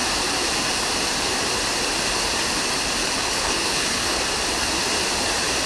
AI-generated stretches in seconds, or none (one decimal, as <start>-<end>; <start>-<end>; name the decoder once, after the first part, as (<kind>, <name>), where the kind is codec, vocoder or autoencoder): 3.0-4.2 (codec, HILCodec)